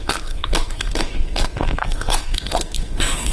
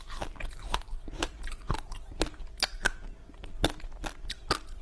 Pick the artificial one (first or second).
first